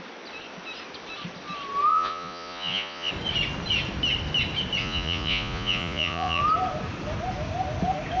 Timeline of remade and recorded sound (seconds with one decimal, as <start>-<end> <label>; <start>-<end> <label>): 0.0-1.9 recorded; 1.9-3.1 remade; 3.1-4.8 recorded; 4.8-6.4 remade; 6.4-8.2 recorded